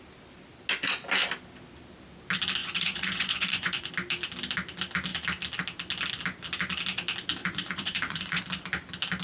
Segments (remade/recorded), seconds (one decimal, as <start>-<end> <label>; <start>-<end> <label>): 0.0-2.6 recorded; 2.6-3.9 remade; 3.9-7.4 recorded; 7.4-8.4 remade; 8.4-9.2 recorded